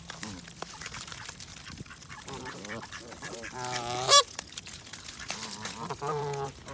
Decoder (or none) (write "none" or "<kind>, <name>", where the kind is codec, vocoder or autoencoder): vocoder, BigVGAN v2